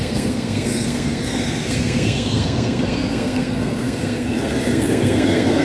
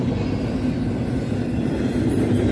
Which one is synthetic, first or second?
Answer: first